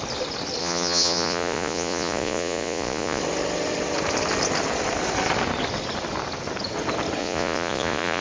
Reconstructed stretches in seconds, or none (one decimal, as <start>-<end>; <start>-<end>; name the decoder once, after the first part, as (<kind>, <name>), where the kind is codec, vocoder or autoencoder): 0.6-3.2 (vocoder, Vocos); 7.2-8.2